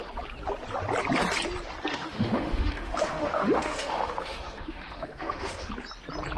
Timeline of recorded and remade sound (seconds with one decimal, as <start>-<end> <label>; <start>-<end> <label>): 0.0-1.9 recorded; 1.9-5.7 remade; 5.7-6.4 recorded

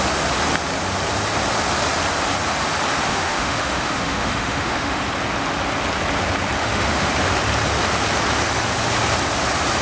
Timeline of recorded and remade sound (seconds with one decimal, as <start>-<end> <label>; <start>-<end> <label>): 0.0-3.1 recorded; 3.1-5.0 remade; 5.0-6.6 recorded; 6.6-7.1 remade; 7.1-9.8 recorded

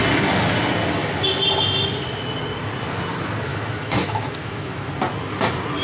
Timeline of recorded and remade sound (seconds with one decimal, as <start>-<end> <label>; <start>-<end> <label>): 0.0-3.5 recorded; 3.5-4.9 remade; 4.9-5.8 recorded

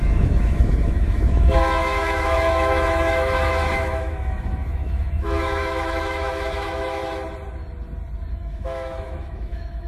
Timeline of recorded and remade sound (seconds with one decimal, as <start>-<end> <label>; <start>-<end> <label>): 0.0-7.0 remade; 7.0-8.3 recorded; 8.3-9.9 remade

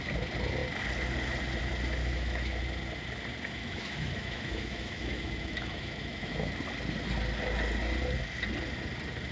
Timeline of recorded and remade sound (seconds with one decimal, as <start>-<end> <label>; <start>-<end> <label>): 0.0-2.0 recorded; 2.0-2.6 remade; 2.6-3.6 recorded; 3.6-6.5 remade; 6.5-9.3 recorded

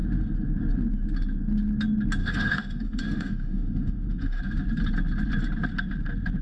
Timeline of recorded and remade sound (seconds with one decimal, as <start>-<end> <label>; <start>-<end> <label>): 0.0-2.2 recorded; 2.2-4.4 remade; 4.4-6.4 recorded

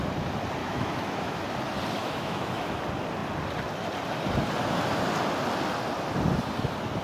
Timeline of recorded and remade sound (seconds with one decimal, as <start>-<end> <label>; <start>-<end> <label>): 0.0-0.6 recorded; 0.6-1.4 remade; 1.4-2.0 recorded; 2.0-2.8 remade; 2.8-7.0 recorded